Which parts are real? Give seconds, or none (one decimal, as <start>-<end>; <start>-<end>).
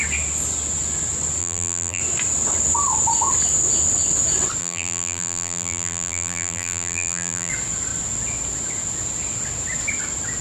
0.0-1.4; 2.0-4.6; 7.5-10.4